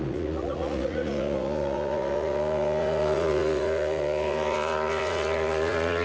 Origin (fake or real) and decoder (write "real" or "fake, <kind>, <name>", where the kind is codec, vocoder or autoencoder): fake, vocoder, Vocos